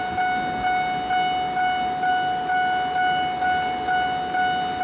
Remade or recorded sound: recorded